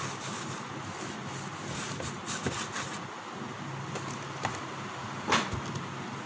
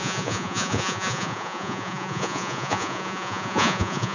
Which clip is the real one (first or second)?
first